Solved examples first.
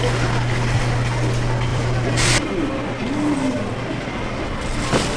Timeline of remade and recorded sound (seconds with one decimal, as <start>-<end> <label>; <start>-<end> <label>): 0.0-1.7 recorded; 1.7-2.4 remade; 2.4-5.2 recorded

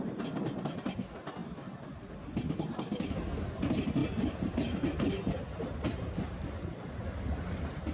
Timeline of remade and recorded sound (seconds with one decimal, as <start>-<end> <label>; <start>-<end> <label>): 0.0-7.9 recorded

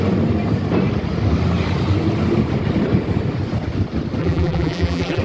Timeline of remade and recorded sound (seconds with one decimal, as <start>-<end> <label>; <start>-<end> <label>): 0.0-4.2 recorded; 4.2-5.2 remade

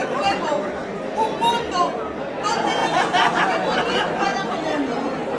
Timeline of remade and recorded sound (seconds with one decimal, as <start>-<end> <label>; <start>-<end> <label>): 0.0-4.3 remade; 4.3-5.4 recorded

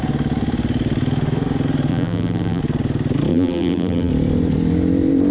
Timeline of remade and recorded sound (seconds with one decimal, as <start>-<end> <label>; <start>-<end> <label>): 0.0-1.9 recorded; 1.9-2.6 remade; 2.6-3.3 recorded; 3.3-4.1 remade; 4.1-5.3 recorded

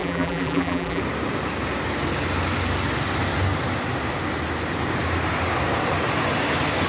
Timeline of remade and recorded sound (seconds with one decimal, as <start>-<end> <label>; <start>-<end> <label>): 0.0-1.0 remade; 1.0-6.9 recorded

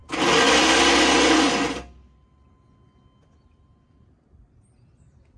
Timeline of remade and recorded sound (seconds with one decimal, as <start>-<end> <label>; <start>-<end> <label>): 0.0-5.4 recorded